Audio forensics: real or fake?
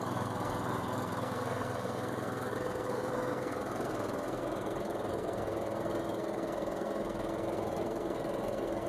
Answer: fake